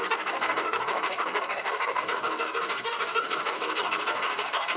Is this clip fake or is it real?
fake